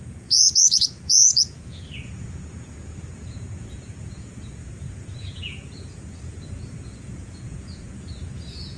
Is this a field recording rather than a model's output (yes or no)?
no